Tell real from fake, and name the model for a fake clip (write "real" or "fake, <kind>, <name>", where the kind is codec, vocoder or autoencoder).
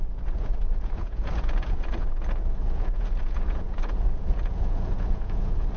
fake, vocoder, Vocos